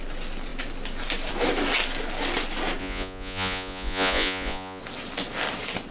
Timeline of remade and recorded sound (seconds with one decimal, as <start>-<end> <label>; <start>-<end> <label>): 0.0-2.8 recorded; 2.8-4.8 remade; 4.8-5.9 recorded